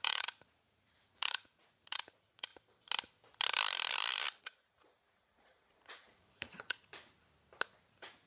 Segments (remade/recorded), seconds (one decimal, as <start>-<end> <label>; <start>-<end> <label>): 0.0-2.5 remade; 2.5-4.4 recorded; 4.4-6.9 remade; 6.9-7.8 recorded; 7.8-8.3 remade